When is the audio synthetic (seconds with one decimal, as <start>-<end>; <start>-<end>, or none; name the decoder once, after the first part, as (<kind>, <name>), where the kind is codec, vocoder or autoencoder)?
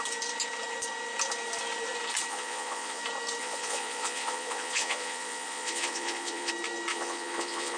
2.3-3.0 (vocoder, Vocos); 3.4-6.5; 6.9-7.8